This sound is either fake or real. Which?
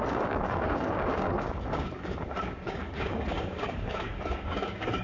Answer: fake